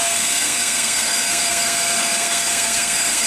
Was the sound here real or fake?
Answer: fake